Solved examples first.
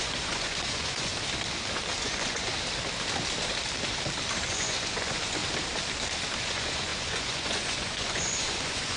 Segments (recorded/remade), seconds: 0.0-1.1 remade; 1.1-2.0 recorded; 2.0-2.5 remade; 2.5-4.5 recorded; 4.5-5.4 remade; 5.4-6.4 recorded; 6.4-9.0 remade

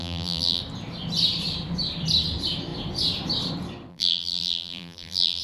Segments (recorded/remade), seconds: 0.0-0.6 remade; 0.6-3.9 recorded; 3.9-5.4 remade

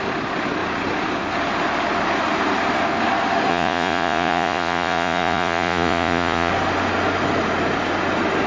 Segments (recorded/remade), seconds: 0.0-3.5 recorded; 3.5-6.5 remade; 6.5-8.5 recorded

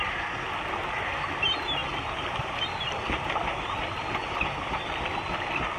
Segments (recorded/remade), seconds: 0.0-5.8 recorded